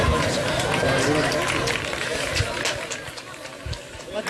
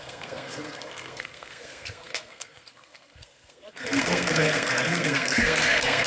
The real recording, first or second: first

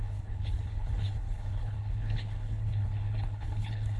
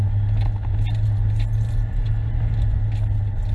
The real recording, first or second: second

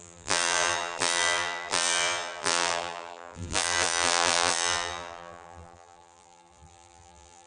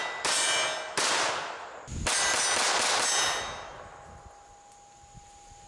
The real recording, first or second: second